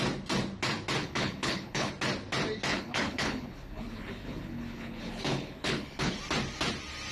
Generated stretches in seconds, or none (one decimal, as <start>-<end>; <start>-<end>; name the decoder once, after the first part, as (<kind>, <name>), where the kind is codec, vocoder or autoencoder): 1.0-1.9 (codec, HILCodec); 2.7-6.1